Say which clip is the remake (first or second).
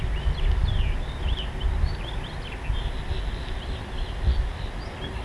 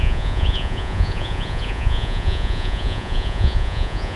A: second